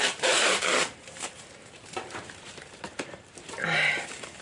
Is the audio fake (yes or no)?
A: yes